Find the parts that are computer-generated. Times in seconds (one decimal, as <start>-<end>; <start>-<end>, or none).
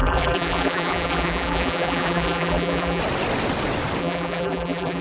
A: 0.0-3.0; 4.0-5.0